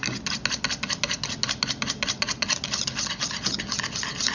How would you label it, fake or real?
real